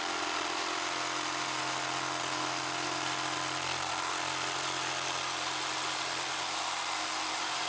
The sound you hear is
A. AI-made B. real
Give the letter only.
B